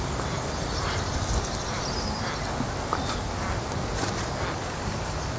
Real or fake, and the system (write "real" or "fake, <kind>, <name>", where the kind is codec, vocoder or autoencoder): real